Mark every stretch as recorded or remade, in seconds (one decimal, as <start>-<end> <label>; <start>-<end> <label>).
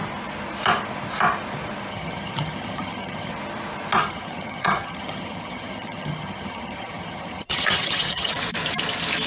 0.0-1.9 recorded; 1.9-3.3 remade; 3.3-4.0 recorded; 4.0-8.3 remade; 8.3-9.3 recorded